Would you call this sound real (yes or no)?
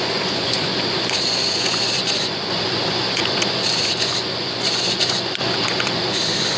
no